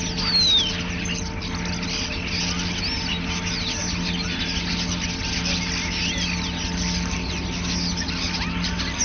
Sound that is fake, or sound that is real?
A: real